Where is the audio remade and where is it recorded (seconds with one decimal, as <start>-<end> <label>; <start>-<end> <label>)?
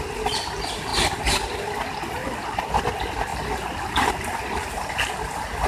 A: 0.0-5.7 recorded